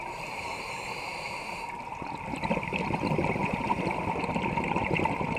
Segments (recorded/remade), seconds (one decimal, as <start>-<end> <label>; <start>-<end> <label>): 0.0-5.4 recorded